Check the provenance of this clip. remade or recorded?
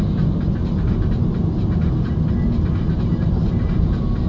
recorded